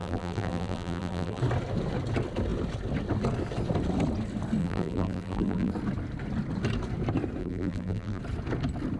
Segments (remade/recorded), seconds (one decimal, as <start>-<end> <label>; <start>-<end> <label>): 0.0-1.4 remade; 1.4-4.6 recorded; 4.6-5.7 remade; 5.7-7.4 recorded; 7.4-8.2 remade; 8.2-9.0 recorded

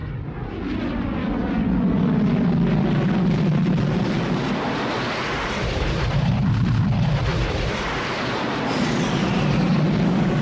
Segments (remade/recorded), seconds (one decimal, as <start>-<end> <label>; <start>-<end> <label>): 0.0-5.4 recorded; 5.4-6.8 remade; 6.8-7.3 recorded; 7.3-8.4 remade; 8.4-10.4 recorded

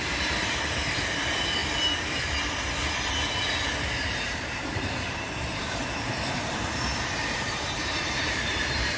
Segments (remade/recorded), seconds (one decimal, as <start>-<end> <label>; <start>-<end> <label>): 0.0-1.6 remade; 1.6-3.7 recorded; 3.7-9.0 remade

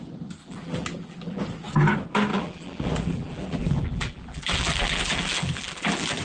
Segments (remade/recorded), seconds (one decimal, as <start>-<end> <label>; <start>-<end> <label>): 0.0-0.4 recorded; 0.4-1.4 remade; 1.4-2.3 recorded; 2.3-6.2 remade